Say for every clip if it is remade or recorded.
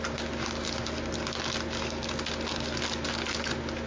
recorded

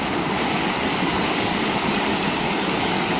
remade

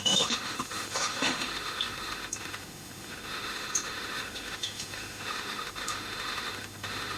remade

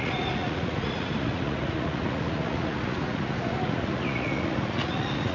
remade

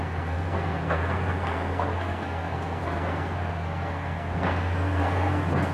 remade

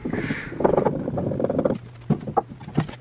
recorded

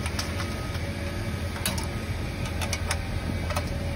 recorded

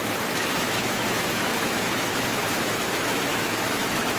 remade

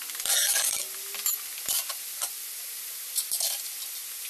recorded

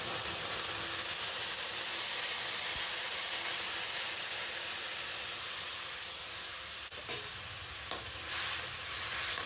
recorded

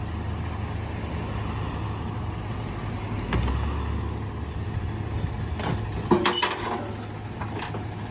recorded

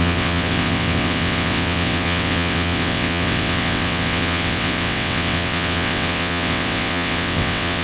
remade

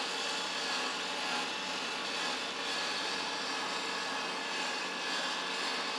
recorded